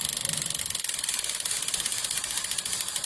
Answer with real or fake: fake